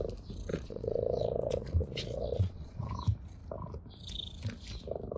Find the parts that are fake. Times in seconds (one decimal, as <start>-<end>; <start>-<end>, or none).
0.5-2.9